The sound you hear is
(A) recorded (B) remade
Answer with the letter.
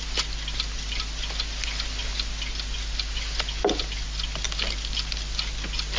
A